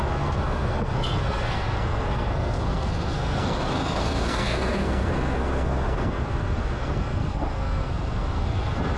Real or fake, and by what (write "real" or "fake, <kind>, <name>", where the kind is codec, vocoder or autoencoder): fake, codec, SNAC